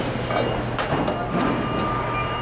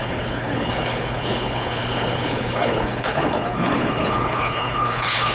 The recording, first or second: first